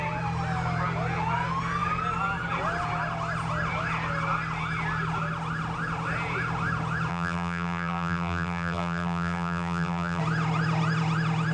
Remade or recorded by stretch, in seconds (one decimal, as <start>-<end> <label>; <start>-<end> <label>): 0.0-7.1 recorded; 7.1-10.2 remade; 10.2-11.5 recorded